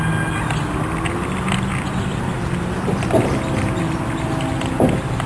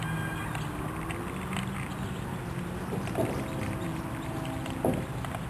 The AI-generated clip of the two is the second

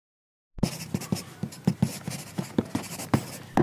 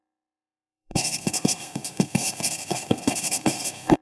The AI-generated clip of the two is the second